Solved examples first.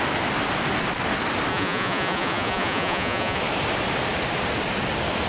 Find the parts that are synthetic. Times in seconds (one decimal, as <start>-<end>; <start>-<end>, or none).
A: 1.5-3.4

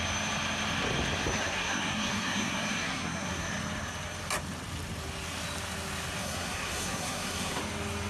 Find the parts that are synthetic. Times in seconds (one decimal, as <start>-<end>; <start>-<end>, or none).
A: 1.4-3.5; 6.2-7.6

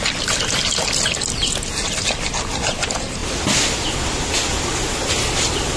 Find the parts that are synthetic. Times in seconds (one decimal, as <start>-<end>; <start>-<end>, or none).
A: none

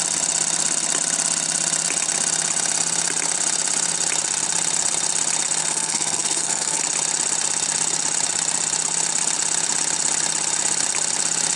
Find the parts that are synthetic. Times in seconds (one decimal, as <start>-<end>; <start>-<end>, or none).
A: 5.6-6.8

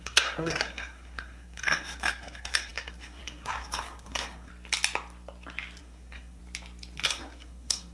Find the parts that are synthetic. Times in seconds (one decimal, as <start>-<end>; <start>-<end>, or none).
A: 0.0-4.5; 5.8-6.4; 7.1-7.9

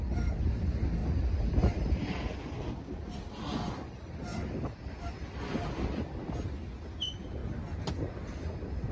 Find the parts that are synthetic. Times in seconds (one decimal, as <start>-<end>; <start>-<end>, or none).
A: none

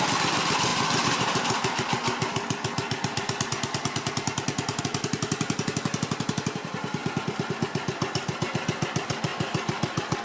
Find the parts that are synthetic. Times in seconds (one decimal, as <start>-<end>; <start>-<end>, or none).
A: none